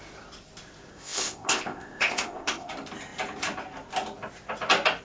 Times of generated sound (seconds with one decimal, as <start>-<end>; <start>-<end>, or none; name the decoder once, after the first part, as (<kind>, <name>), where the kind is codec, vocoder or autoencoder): 0.9-2.7 (codec, ZipCodec)